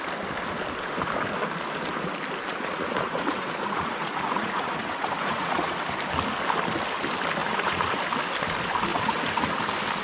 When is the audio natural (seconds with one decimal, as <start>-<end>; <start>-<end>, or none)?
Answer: 0.0-2.5; 5.8-7.4; 8.0-8.9; 9.5-10.0